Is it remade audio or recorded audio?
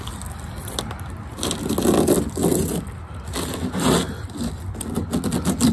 recorded